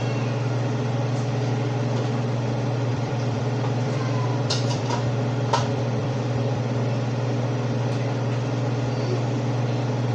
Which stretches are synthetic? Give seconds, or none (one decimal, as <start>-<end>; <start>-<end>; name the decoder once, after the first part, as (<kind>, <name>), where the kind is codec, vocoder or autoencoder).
2.9-4.8 (vocoder, BigVGAN v2); 6.0-6.6